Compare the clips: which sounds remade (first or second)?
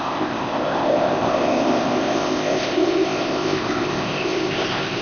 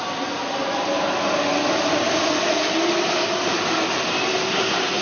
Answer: first